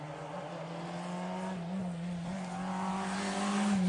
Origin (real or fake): real